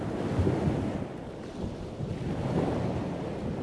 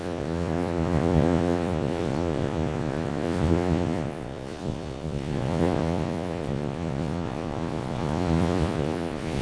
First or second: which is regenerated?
second